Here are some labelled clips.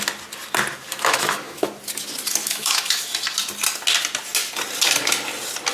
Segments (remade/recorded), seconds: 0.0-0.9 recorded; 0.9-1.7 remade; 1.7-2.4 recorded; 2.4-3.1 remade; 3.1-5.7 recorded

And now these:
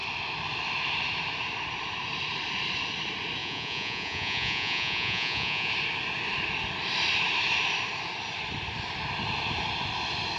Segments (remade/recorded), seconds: 0.0-3.4 recorded; 3.4-5.7 remade; 5.7-10.4 recorded

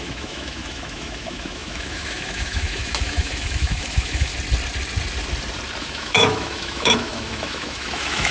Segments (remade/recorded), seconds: 0.0-4.3 remade; 4.3-5.8 recorded; 5.8-8.3 remade

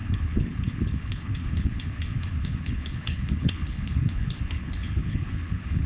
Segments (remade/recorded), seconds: 0.0-5.9 remade

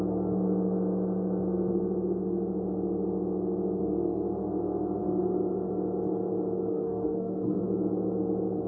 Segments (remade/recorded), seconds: 0.0-6.7 recorded; 6.7-7.6 remade; 7.6-8.7 recorded

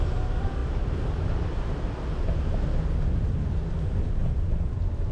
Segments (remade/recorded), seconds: 0.0-5.1 recorded